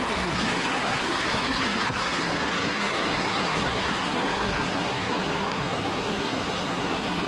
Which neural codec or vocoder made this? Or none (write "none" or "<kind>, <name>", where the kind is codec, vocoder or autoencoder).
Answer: codec, SNAC